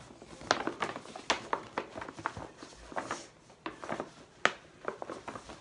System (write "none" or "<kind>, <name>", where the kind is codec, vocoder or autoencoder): none